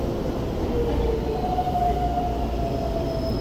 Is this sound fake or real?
real